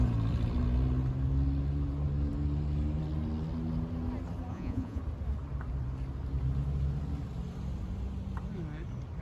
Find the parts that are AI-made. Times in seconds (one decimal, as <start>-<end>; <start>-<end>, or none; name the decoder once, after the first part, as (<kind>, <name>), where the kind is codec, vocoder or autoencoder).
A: 4.5-5.0 (vocoder, Vocos)

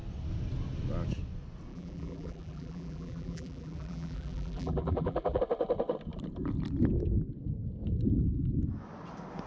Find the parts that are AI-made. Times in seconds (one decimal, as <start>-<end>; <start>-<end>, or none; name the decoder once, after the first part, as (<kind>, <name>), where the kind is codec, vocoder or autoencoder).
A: 1.7-5.4 (vocoder, BigVGAN v2)

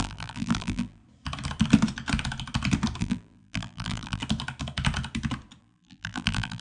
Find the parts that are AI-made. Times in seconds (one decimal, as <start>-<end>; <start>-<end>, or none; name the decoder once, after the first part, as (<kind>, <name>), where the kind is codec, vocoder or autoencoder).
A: 0.0-1.0 (vocoder, BigVGAN v2); 3.0-4.2; 5.6-6.6

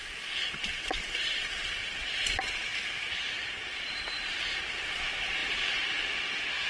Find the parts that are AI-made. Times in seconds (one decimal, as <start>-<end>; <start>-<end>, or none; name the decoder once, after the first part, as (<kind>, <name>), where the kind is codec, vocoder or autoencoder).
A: 0.8-6.7 (vocoder, BigVGAN v2)

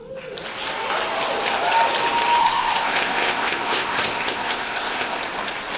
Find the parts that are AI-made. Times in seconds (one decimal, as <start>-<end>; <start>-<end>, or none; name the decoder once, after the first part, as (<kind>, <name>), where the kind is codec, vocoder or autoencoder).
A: 2.4-5.2 (codec, ZipCodec)

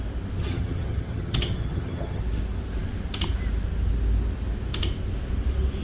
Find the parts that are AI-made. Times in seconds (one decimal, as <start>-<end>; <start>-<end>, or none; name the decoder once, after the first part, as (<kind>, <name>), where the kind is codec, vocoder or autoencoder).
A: 0.4-2.2 (vocoder, HiFi-GAN)

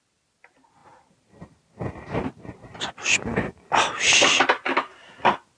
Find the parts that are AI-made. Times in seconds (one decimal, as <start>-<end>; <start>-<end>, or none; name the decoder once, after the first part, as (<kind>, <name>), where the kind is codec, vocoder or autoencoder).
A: none